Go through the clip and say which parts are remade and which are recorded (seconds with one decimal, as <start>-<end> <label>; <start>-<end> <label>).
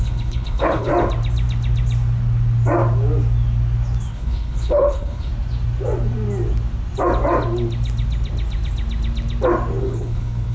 0.0-0.9 remade; 0.9-4.1 recorded; 4.1-5.3 remade; 5.3-9.8 recorded; 9.8-10.5 remade